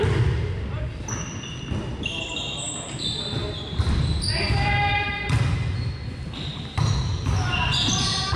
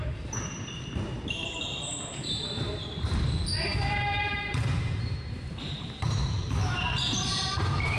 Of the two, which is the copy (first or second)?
second